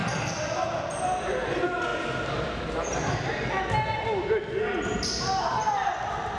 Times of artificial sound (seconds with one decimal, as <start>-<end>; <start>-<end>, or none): 0.0-0.6